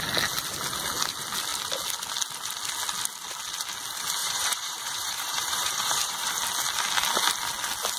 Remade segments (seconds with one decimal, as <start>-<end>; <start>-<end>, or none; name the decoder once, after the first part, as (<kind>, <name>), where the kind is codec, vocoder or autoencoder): 4.2-6.3 (vocoder, BigVGAN v2)